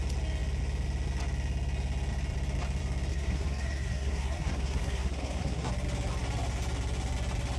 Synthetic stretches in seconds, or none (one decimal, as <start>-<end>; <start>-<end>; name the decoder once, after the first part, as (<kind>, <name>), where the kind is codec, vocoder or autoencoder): 3.1-5.7 (codec, SNAC)